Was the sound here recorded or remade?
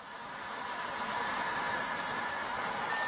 recorded